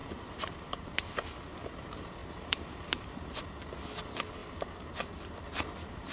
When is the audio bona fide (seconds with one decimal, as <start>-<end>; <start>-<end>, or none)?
1.1-2.2; 3.1-4.4; 5.4-6.1